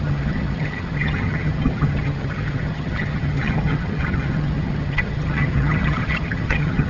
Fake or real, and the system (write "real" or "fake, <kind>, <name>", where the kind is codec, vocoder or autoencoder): fake, vocoder, HiFi-GAN